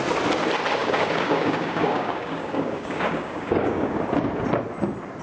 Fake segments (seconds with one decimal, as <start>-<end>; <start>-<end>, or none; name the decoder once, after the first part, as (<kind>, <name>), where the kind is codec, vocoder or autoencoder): 0.8-3.9 (codec, DAC)